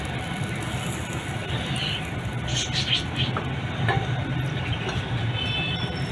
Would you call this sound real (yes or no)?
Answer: yes